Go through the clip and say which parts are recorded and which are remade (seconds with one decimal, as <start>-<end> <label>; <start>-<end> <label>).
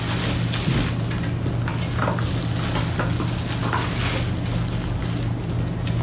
0.0-6.0 recorded